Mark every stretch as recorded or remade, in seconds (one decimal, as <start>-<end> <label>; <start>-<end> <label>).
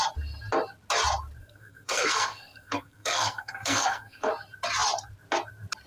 0.0-1.4 recorded; 1.4-4.3 remade; 4.3-5.9 recorded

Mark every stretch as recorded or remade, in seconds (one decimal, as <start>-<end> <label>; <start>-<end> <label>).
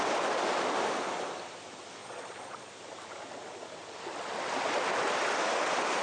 0.0-2.0 recorded; 2.0-2.7 remade; 2.7-6.0 recorded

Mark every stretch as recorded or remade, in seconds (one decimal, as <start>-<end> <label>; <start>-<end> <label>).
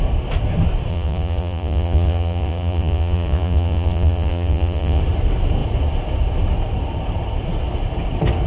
0.0-0.9 recorded; 0.9-5.0 remade; 5.0-8.5 recorded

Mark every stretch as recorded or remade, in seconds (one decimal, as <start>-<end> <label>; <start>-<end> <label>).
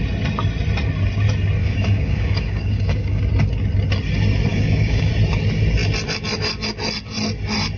0.0-1.6 recorded; 1.6-3.2 remade; 3.2-4.5 recorded; 4.5-5.1 remade; 5.1-7.8 recorded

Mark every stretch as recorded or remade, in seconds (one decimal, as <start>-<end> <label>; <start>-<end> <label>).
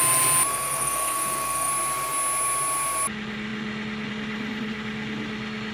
0.0-0.5 recorded; 0.5-1.7 remade; 1.7-5.7 recorded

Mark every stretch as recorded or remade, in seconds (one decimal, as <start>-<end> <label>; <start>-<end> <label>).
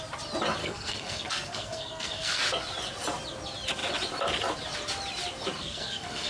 0.0-0.6 recorded; 0.6-2.4 remade; 2.4-5.6 recorded; 5.6-6.3 remade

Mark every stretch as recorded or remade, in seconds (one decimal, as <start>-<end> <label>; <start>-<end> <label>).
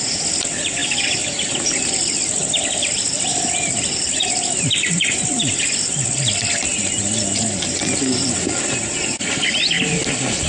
0.0-0.8 recorded; 0.8-1.5 remade; 1.5-3.3 recorded; 3.3-6.1 remade; 6.1-10.5 recorded